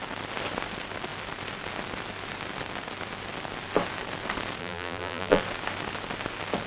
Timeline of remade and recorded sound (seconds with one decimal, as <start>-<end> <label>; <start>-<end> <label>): 0.0-4.6 recorded; 4.6-5.4 remade; 5.4-6.7 recorded